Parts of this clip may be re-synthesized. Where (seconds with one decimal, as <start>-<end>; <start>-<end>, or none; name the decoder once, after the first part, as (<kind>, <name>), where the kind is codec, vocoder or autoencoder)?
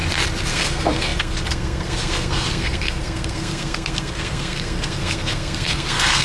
0.5-6.2 (codec, SNAC)